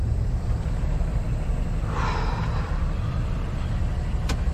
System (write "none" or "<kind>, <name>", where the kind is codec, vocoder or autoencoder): vocoder, BigVGAN v2